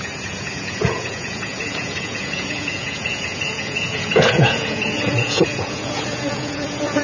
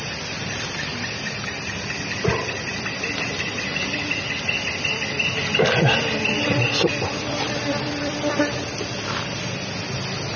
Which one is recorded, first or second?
second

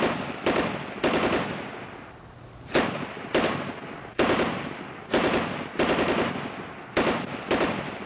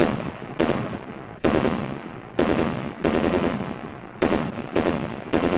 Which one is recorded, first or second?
first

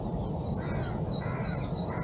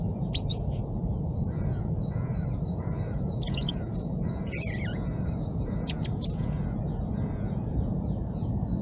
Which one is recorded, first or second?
first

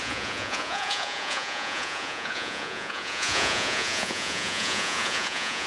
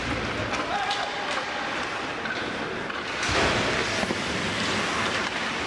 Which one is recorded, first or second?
second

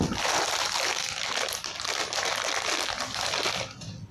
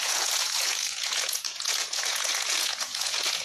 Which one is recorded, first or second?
first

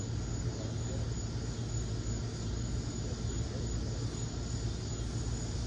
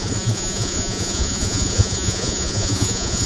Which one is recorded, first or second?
first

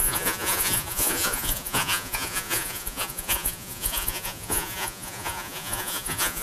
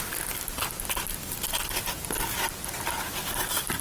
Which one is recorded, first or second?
second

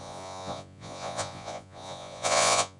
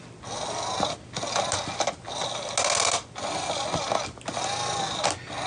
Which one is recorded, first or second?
second